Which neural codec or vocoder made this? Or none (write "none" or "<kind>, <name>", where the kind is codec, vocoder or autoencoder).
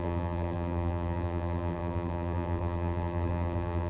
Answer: vocoder, BigVGAN v2